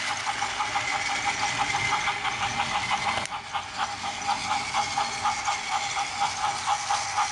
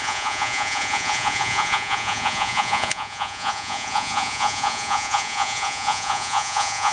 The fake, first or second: second